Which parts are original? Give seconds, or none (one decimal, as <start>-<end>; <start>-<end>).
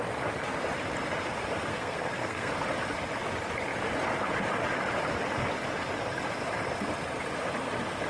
0.0-1.7; 2.5-8.1